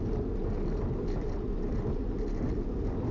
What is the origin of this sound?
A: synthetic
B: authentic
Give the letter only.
B